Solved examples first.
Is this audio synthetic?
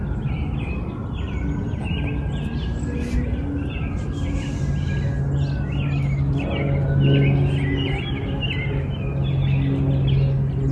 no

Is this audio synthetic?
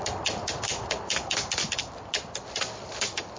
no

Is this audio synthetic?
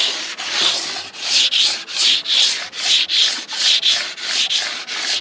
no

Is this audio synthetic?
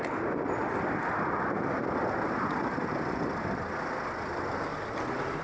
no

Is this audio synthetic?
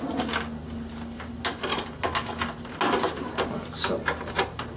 no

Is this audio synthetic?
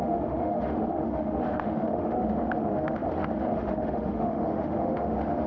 yes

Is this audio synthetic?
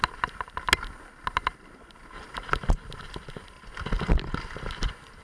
no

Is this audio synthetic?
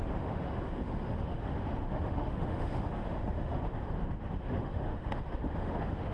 yes